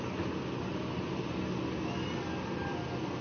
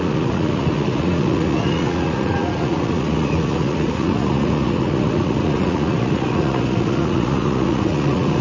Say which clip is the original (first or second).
first